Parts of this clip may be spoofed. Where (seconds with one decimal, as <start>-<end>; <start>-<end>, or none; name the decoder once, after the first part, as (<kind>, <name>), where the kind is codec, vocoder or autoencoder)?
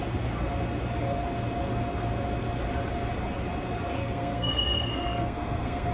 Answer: 4.0-5.9 (codec, SNAC)